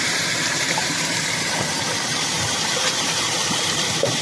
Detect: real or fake fake